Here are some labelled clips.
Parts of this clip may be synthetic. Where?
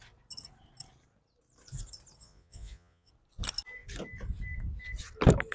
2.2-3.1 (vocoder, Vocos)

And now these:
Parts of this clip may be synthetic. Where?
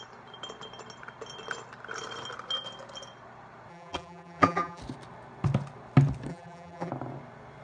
3.7-4.8 (vocoder, BigVGAN v2); 6.3-6.9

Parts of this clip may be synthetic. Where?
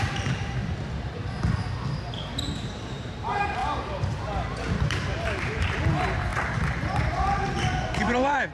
0.0-0.6 (vocoder, BigVGAN v2); 2.3-3.6; 4.8-8.5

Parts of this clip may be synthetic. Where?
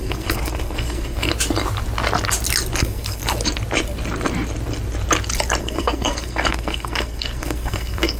0.0-1.3 (codec, SNAC); 2.8-3.2; 5.6-8.2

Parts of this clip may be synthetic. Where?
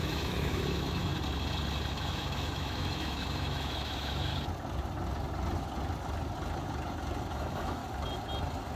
0.0-1.1 (autoencoder, DAC-VAE); 1.9-4.3; 7.3-7.8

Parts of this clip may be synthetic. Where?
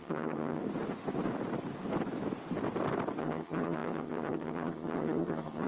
0.0-0.6 (vocoder, HiFi-GAN); 3.2-5.7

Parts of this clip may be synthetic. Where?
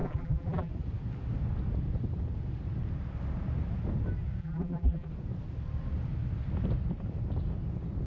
0.0-0.7 (vocoder, BigVGAN v2); 4.4-5.1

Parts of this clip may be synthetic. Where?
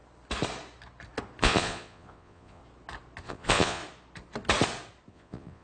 1.4-2.6 (vocoder, Vocos); 3.2-3.8; 5.1-5.6